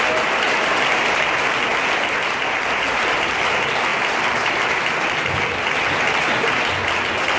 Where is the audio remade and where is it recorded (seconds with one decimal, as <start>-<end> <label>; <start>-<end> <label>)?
0.0-7.4 recorded